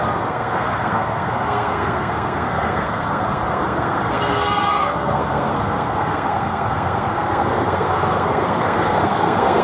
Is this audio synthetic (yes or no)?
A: yes